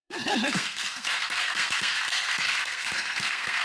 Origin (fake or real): fake